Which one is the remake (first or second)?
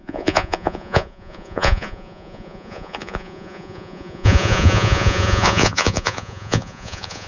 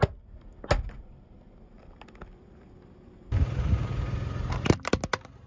first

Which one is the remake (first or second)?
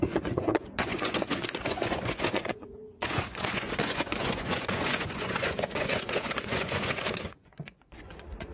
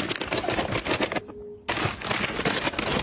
first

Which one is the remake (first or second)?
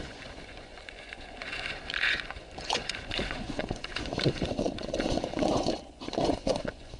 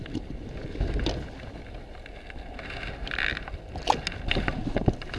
first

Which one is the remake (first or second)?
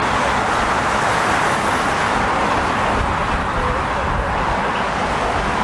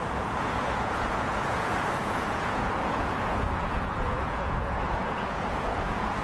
second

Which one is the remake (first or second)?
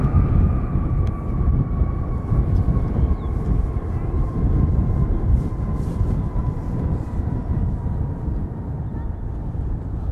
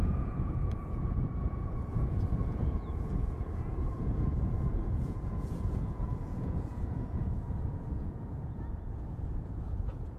second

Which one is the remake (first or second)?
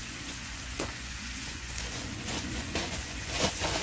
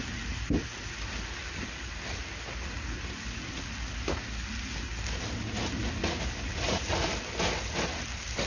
first